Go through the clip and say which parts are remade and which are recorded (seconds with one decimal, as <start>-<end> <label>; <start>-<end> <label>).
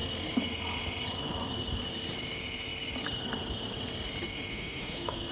0.0-4.5 recorded; 4.5-5.3 remade